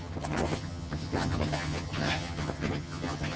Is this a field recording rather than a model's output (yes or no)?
no